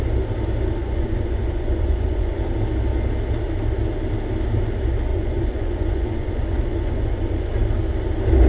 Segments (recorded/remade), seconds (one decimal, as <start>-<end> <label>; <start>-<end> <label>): 0.0-0.8 recorded; 0.8-2.4 remade; 2.4-5.1 recorded; 5.1-7.5 remade; 7.5-8.5 recorded